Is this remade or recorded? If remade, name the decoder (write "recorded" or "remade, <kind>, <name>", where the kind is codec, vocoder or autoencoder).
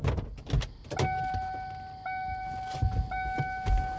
recorded